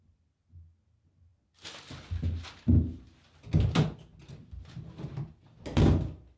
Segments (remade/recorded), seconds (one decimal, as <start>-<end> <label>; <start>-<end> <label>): 0.0-6.4 recorded

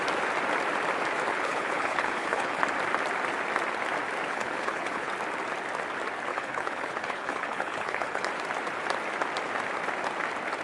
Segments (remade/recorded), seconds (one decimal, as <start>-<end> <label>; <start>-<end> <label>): 0.0-1.3 recorded; 1.3-2.6 remade; 2.6-4.3 recorded; 4.3-5.1 remade; 5.1-6.3 recorded; 6.3-8.3 remade; 8.3-10.6 recorded

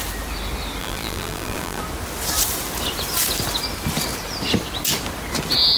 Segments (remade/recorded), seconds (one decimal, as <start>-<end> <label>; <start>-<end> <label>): 0.0-0.8 recorded; 0.8-1.8 remade; 1.8-5.8 recorded

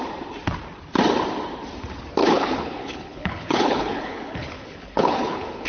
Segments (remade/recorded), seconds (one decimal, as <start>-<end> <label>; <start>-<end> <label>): 0.0-2.2 recorded; 2.2-5.7 remade

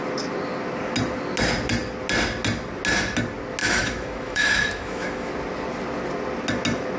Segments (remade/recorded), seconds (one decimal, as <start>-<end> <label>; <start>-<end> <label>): 0.0-3.6 recorded; 3.6-5.3 remade; 5.3-7.0 recorded

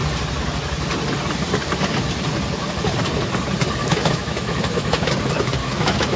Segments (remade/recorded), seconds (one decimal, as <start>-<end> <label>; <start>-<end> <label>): 0.0-3.8 recorded; 3.8-5.1 remade; 5.1-5.6 recorded; 5.6-6.2 remade

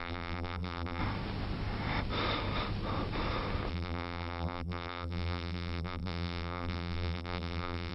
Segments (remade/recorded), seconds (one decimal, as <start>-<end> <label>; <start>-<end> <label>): 0.0-1.0 remade; 1.0-3.7 recorded; 3.7-7.9 remade

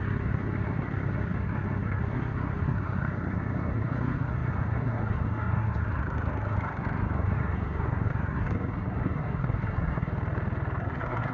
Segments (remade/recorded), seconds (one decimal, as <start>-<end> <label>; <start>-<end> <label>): 0.0-10.1 remade; 10.1-10.8 recorded; 10.8-11.3 remade